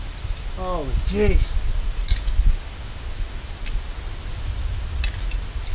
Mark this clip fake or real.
real